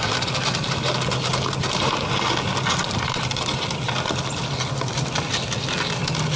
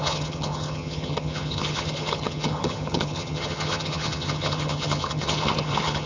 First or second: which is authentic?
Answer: first